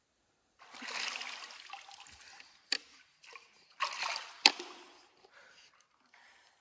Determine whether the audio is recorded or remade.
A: recorded